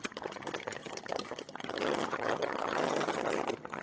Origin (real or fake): fake